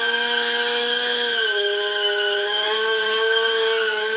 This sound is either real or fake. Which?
fake